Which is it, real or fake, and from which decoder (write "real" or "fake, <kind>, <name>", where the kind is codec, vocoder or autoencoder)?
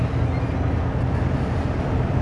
real